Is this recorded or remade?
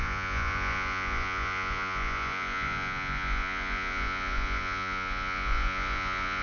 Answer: remade